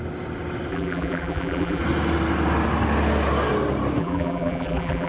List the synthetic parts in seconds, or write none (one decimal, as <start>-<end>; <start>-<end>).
0.7-1.8; 4.0-5.1